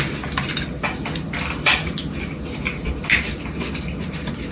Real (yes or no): yes